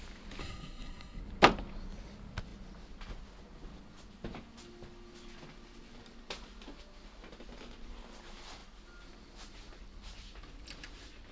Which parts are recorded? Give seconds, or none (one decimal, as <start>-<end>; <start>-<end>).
0.0-0.4; 1.2-11.3